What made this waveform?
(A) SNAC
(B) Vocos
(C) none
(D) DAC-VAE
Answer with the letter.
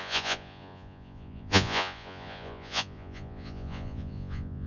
B